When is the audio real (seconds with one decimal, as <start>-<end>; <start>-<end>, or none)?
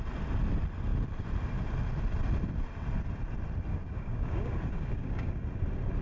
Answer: 0.0-3.7; 5.3-6.0